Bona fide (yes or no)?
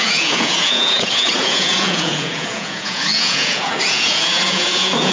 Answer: no